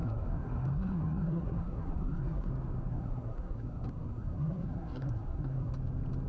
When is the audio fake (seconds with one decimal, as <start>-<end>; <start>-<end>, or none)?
0.0-2.5; 2.9-5.7